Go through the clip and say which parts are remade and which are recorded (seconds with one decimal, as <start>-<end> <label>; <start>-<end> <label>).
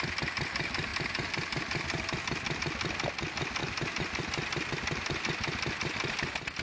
0.0-6.6 recorded